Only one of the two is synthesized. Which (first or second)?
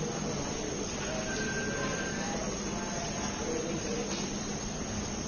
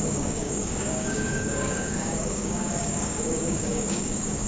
second